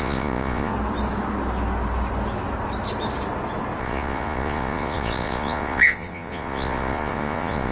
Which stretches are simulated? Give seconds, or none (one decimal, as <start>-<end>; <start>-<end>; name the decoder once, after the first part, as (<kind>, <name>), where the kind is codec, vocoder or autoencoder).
0.0-0.7 (vocoder, Vocos); 3.8-7.7

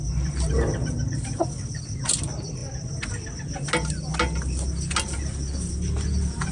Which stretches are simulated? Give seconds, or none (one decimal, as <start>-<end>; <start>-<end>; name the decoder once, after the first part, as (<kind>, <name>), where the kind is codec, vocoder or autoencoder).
none